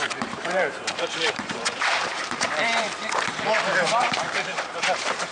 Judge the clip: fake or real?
fake